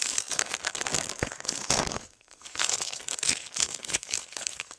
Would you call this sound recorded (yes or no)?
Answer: no